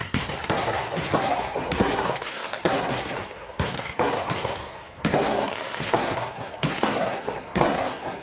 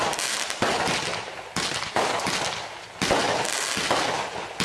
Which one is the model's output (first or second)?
first